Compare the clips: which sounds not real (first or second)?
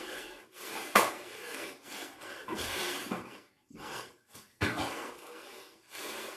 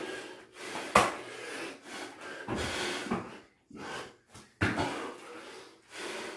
first